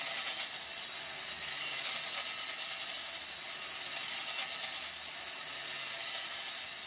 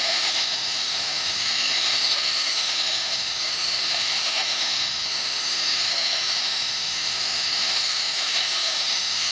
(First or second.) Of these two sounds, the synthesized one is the second